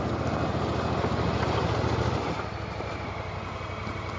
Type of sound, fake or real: real